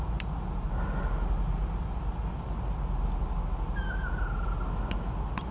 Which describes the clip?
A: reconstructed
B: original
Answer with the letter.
B